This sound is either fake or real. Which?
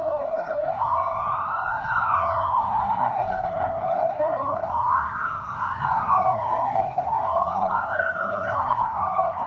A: fake